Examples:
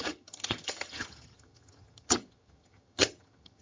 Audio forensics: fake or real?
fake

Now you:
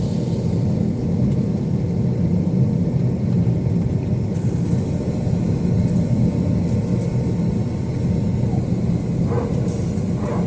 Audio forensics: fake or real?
real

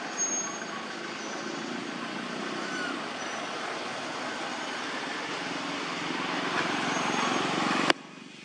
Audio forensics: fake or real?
real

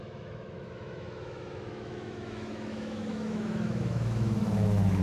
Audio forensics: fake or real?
fake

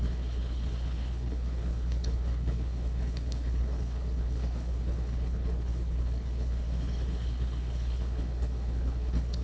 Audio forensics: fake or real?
fake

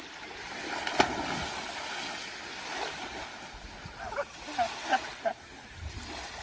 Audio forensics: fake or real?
real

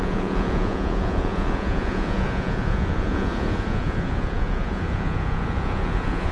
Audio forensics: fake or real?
fake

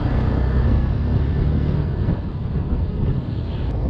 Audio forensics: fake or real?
fake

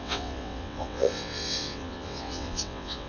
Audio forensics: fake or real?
fake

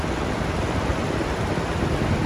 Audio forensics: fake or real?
real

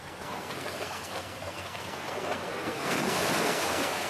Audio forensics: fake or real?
fake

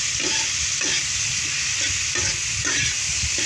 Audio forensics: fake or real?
real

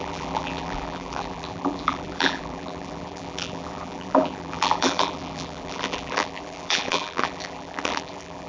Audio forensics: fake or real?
fake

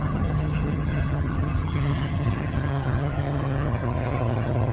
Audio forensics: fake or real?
fake